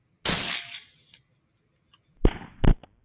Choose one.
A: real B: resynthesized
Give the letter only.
A